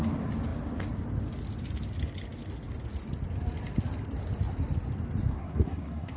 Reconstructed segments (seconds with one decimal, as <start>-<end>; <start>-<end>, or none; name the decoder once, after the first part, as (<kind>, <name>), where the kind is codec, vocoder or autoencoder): 5.3-6.2 (codec, SNAC)